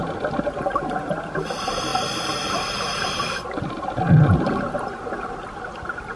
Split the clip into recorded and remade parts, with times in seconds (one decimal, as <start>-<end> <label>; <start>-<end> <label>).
0.0-6.2 recorded